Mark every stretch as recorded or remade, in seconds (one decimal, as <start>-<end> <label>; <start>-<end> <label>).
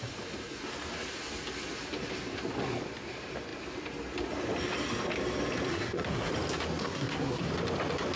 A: 0.0-5.7 recorded; 5.7-6.3 remade; 6.3-6.8 recorded; 6.8-7.5 remade; 7.5-8.2 recorded